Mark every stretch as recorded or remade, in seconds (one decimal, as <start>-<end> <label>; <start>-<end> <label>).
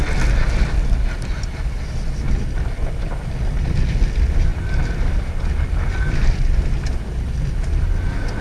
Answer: 0.0-4.5 recorded; 4.5-5.1 remade; 5.1-8.4 recorded